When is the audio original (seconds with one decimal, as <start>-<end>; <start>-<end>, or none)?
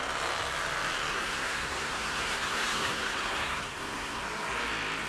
0.0-1.1; 4.2-5.1